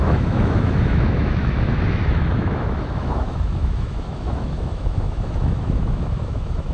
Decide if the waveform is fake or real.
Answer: fake